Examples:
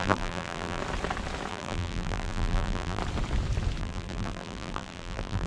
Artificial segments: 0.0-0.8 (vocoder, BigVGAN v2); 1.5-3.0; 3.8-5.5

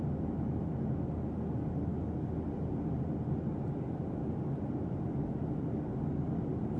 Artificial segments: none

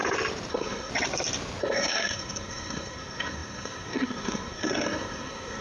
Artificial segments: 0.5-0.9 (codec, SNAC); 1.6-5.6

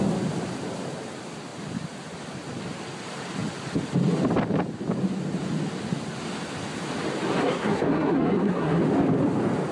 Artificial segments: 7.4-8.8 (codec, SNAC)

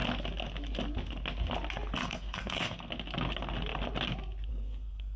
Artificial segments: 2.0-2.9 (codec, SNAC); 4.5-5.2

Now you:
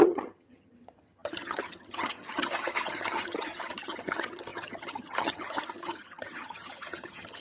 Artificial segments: 0.0-7.4 (vocoder, HiFi-GAN)

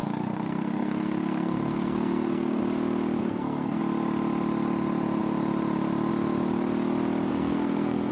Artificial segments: 0.0-2.6 (codec, SNAC); 3.2-3.8; 7.3-8.1

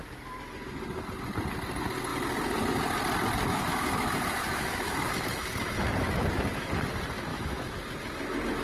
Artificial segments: 3.5-6.7 (autoencoder, DAC-VAE); 7.3-7.8